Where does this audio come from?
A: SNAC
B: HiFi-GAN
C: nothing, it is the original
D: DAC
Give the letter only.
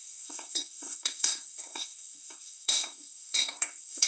A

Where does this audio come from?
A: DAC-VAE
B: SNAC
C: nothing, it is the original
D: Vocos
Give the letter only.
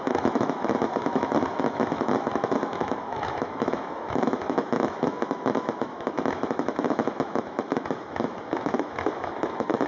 A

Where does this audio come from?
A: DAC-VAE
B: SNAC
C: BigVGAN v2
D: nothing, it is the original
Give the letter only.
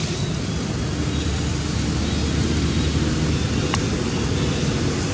D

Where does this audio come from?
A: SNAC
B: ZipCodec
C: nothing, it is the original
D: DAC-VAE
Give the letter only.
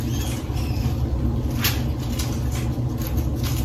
C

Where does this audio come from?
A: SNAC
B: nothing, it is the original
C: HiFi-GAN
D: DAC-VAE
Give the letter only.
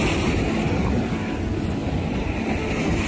B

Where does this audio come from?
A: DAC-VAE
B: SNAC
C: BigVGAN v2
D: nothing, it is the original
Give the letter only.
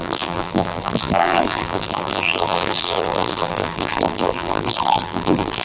C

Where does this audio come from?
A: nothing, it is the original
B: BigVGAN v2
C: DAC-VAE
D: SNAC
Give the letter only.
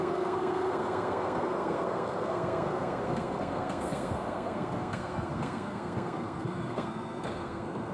D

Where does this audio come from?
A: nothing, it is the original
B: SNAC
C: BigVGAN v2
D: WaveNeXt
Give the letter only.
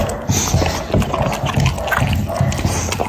A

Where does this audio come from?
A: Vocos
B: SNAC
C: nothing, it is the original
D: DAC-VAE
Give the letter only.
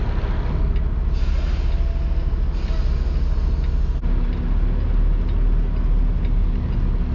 C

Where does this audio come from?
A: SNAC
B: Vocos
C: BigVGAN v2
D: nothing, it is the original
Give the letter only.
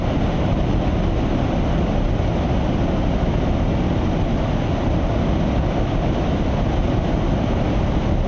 D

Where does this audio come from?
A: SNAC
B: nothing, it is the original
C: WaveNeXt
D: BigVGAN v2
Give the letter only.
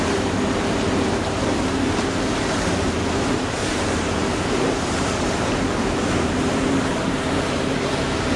D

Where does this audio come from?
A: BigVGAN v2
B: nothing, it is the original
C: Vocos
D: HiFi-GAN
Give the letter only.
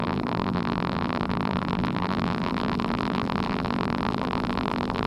A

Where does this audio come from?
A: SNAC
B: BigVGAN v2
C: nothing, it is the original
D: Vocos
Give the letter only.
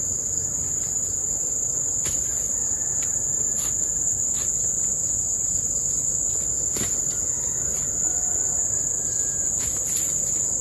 C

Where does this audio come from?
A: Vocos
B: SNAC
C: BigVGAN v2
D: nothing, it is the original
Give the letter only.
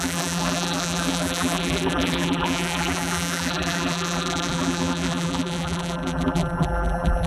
C